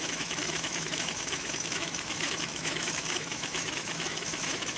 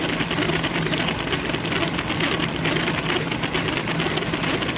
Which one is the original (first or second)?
second